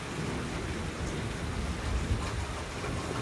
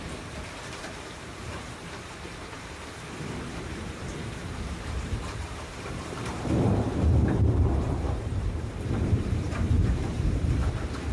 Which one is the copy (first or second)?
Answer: second